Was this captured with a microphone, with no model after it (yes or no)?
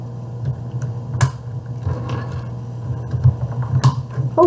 yes